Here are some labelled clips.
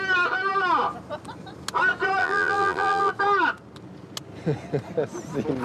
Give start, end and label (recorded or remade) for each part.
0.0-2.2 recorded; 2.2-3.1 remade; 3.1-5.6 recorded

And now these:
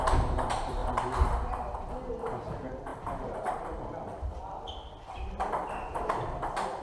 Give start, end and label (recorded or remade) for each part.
0.0-0.8 remade; 0.8-1.5 recorded; 1.5-6.8 remade

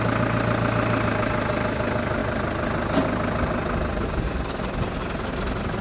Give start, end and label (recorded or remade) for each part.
0.0-5.8 recorded

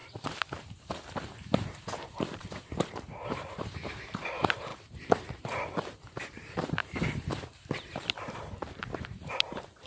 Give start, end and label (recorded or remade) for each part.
0.0-9.9 remade

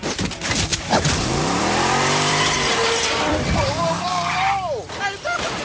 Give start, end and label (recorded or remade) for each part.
0.0-0.7 recorded; 0.7-4.1 remade; 4.1-5.6 recorded